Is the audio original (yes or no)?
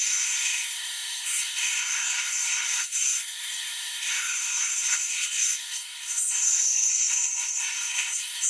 no